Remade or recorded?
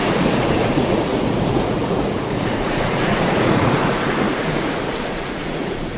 remade